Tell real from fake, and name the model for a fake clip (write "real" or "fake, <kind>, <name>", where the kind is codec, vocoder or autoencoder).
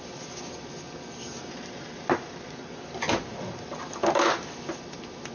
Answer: real